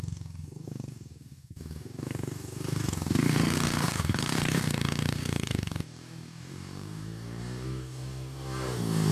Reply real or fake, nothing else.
fake